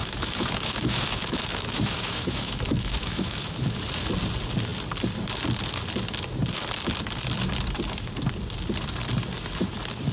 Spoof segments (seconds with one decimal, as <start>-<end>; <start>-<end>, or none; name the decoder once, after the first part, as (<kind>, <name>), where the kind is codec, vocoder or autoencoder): 0.0-3.8 (autoencoder, DAC-VAE)